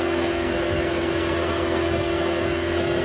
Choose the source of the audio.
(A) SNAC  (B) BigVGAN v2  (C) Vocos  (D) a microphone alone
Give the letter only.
A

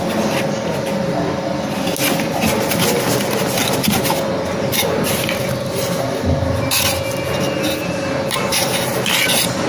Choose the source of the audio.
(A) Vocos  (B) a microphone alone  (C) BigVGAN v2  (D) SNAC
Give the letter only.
B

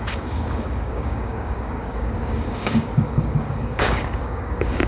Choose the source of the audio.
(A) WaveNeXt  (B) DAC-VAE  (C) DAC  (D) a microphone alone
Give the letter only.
C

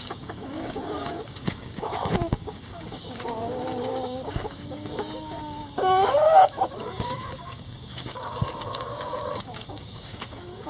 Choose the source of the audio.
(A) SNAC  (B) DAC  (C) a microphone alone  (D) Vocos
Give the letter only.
B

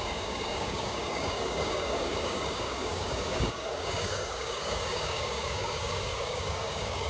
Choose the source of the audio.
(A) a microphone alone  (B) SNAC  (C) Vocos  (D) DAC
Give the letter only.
D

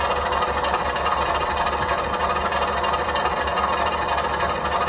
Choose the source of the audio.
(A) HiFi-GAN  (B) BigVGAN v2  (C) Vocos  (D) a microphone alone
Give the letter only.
D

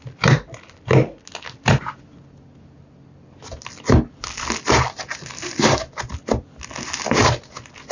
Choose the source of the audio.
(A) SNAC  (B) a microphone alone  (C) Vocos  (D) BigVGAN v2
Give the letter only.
B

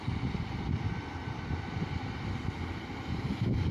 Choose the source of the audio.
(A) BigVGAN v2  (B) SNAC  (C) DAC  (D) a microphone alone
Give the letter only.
D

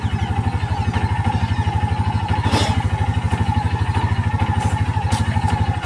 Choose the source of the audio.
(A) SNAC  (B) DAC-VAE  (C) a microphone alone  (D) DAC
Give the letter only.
C